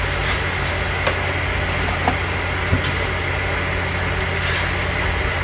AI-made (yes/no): no